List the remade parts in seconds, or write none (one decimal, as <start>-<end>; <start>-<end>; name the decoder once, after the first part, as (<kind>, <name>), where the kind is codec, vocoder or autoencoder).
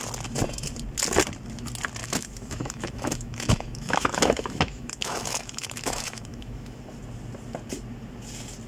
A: 2.0-6.8 (autoencoder, DAC-VAE)